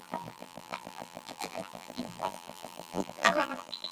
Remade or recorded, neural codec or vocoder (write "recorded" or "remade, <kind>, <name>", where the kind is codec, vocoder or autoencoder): remade, vocoder, BigVGAN v2